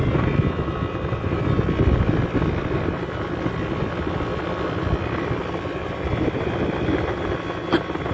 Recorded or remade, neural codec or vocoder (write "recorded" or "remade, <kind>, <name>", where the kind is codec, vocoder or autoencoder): recorded